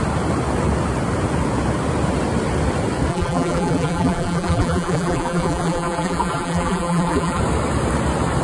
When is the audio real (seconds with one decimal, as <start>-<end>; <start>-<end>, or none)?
0.0-3.1; 7.4-8.4